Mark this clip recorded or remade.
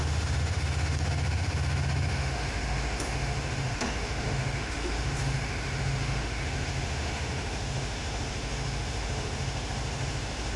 remade